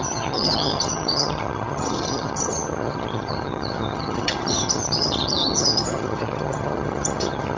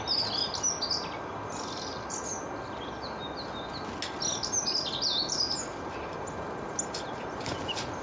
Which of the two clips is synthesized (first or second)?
first